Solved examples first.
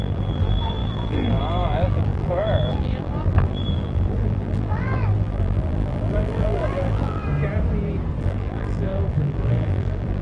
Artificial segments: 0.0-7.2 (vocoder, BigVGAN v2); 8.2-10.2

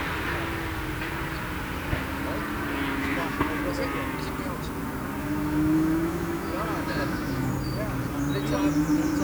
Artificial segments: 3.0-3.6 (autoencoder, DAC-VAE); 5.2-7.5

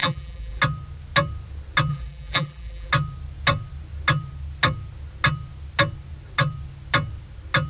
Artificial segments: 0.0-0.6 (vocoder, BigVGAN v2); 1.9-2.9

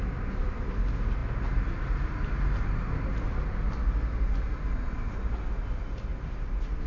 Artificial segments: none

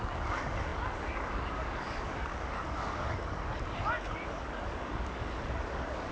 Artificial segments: 0.0-6.1 (codec, DAC)